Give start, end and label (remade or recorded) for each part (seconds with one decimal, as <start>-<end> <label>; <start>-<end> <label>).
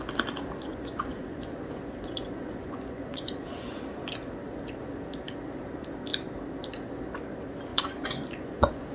0.0-0.7 recorded; 0.7-3.7 remade; 3.7-7.7 recorded; 7.7-8.9 remade